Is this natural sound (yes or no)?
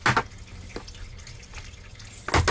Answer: yes